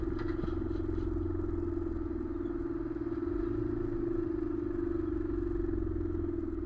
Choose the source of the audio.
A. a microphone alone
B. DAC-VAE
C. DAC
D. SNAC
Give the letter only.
A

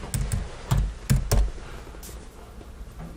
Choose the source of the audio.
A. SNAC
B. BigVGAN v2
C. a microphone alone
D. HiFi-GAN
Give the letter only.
C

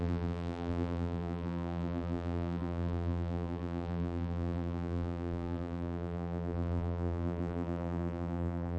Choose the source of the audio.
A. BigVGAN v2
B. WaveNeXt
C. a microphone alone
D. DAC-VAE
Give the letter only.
A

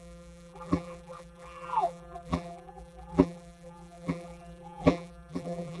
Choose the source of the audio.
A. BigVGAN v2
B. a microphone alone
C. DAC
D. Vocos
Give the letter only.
A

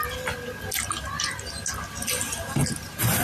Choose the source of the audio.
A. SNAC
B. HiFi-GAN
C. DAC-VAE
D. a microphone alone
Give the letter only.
D